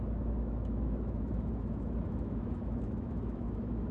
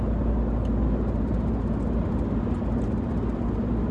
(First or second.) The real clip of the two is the second